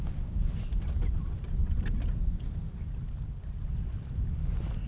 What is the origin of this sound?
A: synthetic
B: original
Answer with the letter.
B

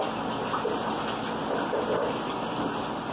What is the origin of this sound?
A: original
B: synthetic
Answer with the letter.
A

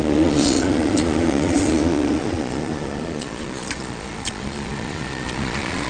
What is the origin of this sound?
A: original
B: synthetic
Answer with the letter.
B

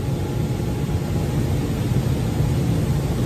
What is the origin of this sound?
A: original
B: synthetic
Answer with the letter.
A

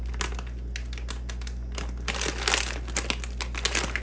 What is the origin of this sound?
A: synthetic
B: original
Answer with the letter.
B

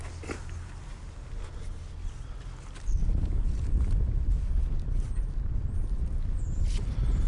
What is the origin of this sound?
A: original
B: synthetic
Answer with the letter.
A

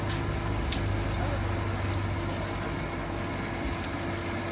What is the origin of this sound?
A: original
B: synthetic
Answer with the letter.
A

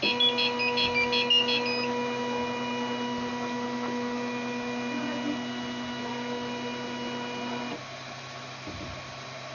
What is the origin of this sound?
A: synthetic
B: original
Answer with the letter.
B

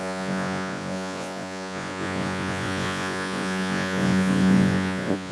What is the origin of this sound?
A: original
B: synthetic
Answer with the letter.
B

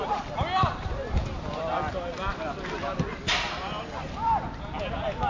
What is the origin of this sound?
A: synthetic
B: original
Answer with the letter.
B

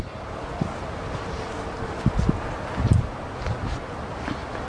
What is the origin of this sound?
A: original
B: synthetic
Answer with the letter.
A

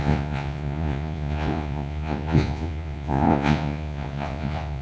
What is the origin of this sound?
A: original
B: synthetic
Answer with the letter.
B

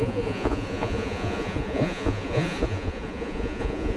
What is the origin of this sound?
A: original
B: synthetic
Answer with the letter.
B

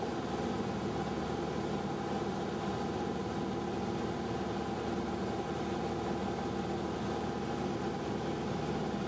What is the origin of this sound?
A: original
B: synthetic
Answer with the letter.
A